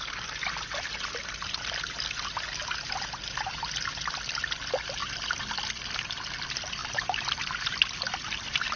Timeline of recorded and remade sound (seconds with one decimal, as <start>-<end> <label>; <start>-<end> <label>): 0.0-6.8 recorded; 6.8-7.4 remade; 7.4-8.8 recorded